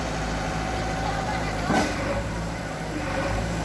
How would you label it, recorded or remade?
remade